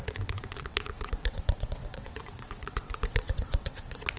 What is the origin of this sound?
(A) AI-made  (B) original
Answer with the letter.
A